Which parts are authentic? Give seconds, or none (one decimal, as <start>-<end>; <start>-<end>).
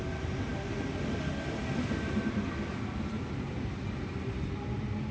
0.0-5.1